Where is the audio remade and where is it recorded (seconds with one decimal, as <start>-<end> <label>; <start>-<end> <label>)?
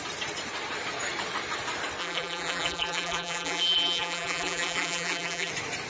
0.0-2.0 recorded; 2.0-5.5 remade; 5.5-5.9 recorded